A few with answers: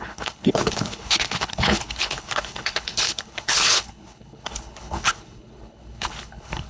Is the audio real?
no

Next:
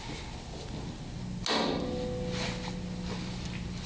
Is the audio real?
yes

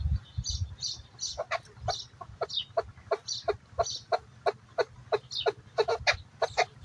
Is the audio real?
yes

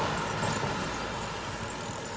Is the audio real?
yes